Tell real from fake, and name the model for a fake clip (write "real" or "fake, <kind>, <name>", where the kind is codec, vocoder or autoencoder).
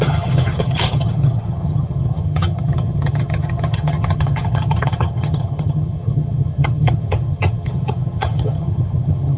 fake, vocoder, HiFi-GAN